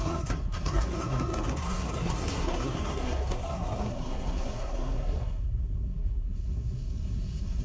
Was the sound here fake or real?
fake